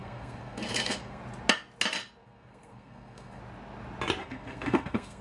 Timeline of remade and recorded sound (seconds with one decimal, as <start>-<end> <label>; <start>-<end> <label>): 0.0-1.2 remade; 1.2-2.2 recorded; 2.2-3.4 remade; 3.4-4.2 recorded; 4.2-5.2 remade